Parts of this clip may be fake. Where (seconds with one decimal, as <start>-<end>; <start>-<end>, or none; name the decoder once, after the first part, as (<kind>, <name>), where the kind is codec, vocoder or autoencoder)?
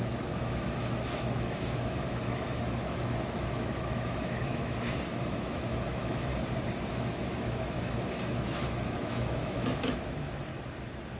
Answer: 0.0-6.3 (autoencoder, DAC-VAE); 6.9-10.5